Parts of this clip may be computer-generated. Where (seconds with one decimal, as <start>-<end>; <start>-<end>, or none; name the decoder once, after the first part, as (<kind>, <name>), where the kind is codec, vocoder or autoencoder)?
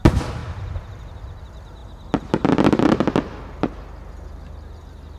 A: none